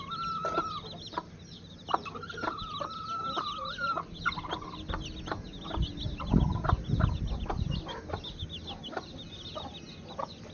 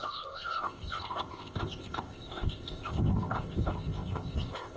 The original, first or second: first